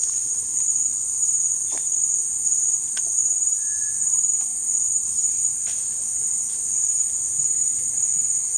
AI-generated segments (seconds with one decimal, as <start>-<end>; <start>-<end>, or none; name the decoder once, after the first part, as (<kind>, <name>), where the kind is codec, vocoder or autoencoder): 0.0-0.7 (vocoder, BigVGAN v2); 1.1-2.2; 4.5-6.5